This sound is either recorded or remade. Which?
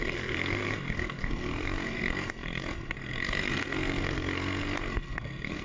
remade